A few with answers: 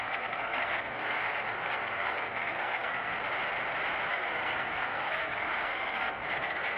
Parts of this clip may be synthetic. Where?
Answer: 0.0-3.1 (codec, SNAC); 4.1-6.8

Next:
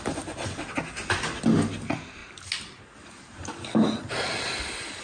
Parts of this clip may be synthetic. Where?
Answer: none